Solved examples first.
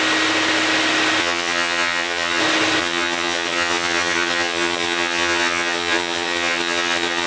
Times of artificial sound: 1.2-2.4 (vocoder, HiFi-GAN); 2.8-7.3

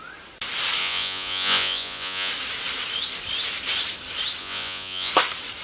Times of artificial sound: 0.8-2.3 (vocoder, Vocos); 4.4-5.1

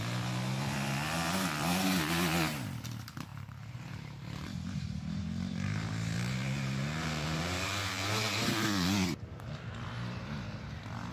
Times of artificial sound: 3.3-8.5 (vocoder, BigVGAN v2)

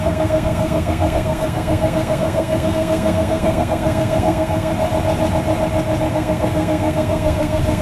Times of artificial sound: 0.0-4.7 (codec, SNAC); 6.1-7.8

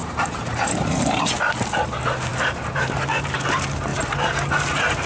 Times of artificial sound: 0.0-1.3 (vocoder, BigVGAN v2); 2.3-3.4

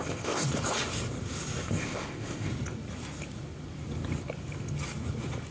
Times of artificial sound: 0.0-0.4 (codec, ZipCodec); 1.6-2.5

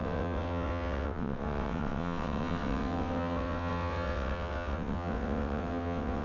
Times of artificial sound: 0.0-6.2 (vocoder, WaveNeXt)